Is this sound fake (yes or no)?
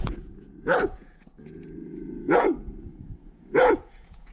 yes